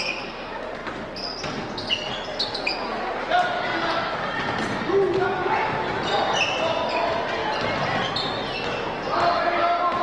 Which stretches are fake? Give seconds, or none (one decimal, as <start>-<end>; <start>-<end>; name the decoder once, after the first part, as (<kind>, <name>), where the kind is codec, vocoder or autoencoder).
none